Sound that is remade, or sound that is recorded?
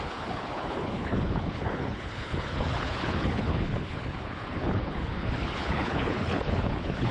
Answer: remade